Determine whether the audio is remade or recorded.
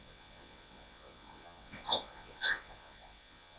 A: remade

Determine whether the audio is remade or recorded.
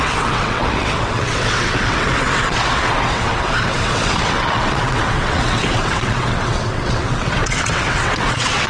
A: remade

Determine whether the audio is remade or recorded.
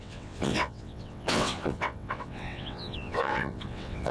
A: remade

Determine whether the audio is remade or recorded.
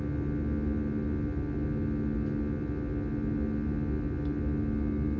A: recorded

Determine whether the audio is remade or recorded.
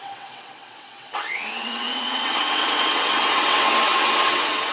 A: remade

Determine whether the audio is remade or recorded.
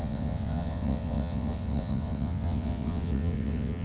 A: remade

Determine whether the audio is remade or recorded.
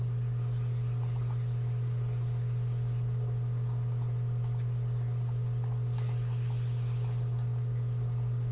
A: recorded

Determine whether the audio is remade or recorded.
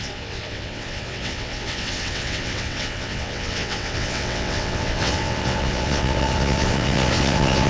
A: remade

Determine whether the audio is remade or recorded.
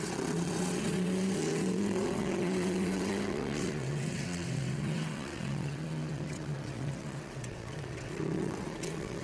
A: remade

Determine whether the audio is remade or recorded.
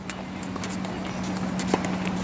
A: recorded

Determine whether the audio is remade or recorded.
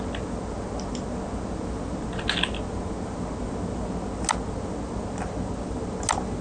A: recorded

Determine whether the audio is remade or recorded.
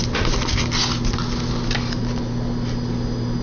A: recorded